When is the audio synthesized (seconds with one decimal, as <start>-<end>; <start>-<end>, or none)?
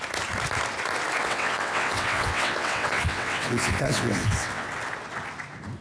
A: 1.2-4.7